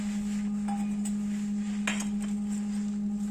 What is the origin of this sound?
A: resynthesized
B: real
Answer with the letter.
B